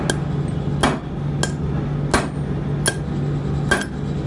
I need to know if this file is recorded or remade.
recorded